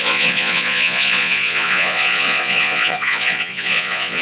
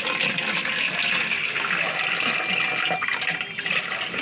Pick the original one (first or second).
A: second